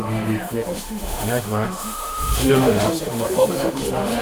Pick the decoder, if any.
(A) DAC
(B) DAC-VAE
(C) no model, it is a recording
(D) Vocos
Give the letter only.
B